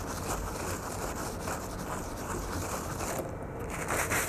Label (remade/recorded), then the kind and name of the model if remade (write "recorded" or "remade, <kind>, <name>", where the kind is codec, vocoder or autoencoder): recorded